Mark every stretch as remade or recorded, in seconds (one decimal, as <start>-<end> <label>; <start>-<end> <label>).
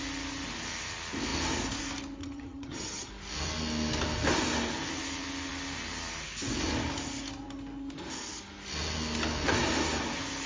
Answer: 0.0-2.2 recorded; 2.2-3.1 remade; 3.1-10.5 recorded